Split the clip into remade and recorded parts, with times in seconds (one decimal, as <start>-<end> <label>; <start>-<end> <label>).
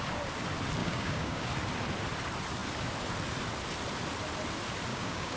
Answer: 0.0-0.8 recorded; 0.8-1.5 remade; 1.5-4.9 recorded; 4.9-5.4 remade